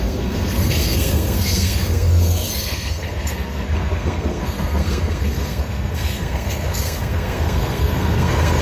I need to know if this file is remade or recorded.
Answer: remade